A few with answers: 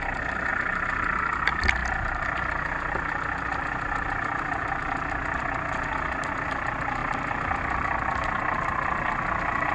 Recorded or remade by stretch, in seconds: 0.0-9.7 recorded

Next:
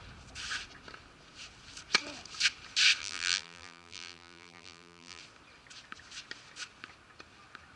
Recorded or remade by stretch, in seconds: 0.0-3.0 recorded; 3.0-5.2 remade; 5.2-7.8 recorded

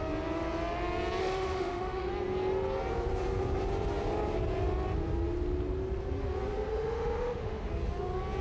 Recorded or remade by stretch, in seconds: 0.0-1.2 recorded; 1.2-2.1 remade; 2.1-6.7 recorded; 6.7-7.7 remade; 7.7-8.4 recorded